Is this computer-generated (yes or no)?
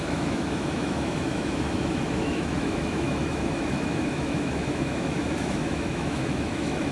yes